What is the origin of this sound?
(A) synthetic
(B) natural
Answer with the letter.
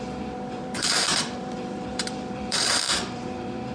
A